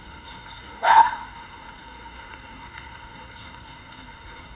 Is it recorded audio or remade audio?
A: remade